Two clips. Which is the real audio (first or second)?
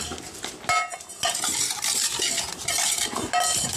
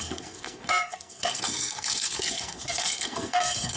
first